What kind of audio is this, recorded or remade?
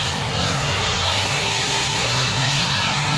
remade